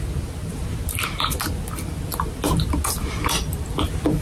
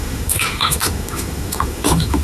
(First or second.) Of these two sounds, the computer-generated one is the second